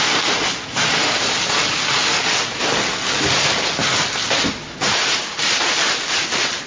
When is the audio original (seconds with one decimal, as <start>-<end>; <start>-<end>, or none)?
0.0-6.7